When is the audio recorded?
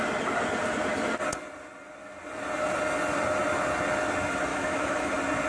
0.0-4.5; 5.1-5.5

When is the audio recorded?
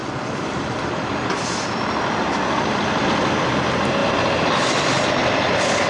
3.5-5.2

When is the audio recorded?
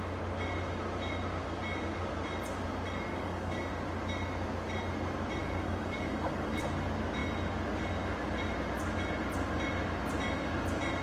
0.0-3.1; 3.7-5.4; 6.6-11.0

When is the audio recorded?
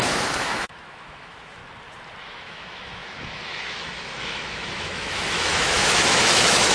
1.6-2.2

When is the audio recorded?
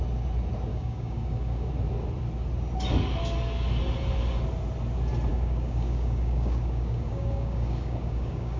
0.0-0.7; 1.7-5.3